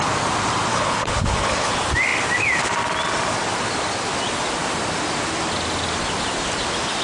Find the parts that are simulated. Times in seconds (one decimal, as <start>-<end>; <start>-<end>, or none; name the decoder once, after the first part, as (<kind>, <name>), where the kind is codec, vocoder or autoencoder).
0.7-1.7 (codec, HILCodec)